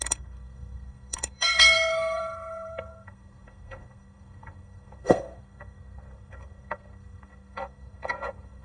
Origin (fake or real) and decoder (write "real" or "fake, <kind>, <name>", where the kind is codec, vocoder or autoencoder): fake, codec, SNAC